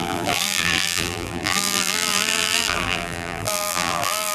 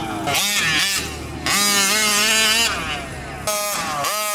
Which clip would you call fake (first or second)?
first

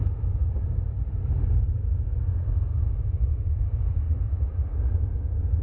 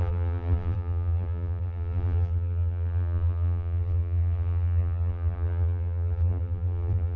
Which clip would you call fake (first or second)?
second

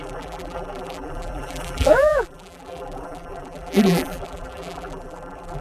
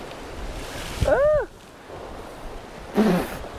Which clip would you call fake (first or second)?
first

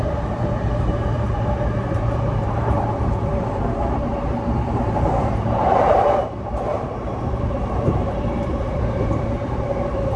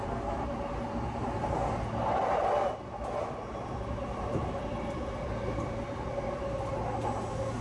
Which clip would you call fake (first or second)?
first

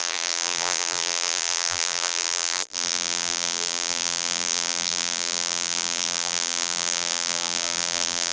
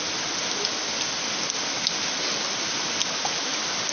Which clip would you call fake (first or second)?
first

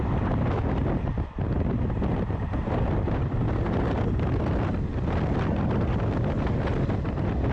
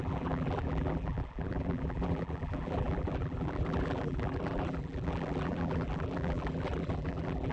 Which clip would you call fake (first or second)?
second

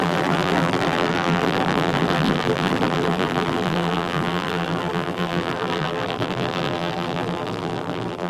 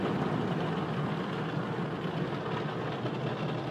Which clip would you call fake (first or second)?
first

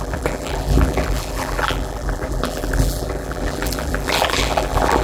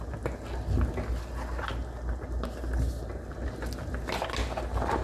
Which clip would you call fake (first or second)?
first